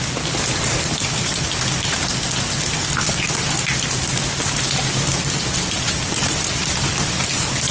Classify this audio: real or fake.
real